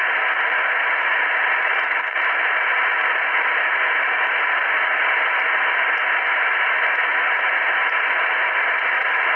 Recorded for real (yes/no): yes